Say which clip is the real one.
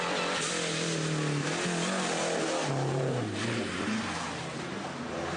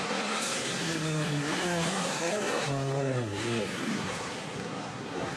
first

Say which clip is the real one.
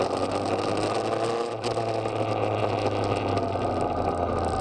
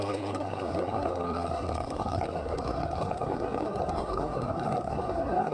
first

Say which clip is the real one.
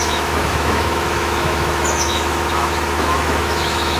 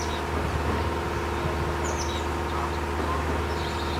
second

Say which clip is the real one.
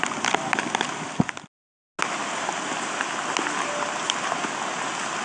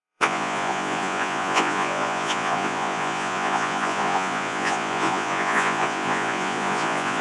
first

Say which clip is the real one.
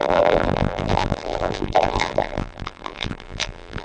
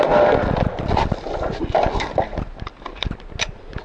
second